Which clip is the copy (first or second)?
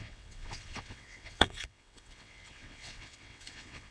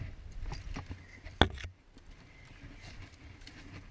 first